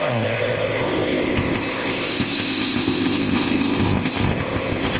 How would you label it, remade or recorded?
remade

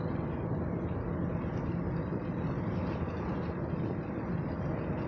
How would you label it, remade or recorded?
recorded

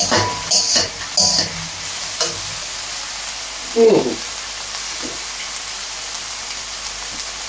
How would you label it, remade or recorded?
recorded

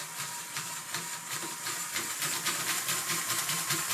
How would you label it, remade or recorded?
remade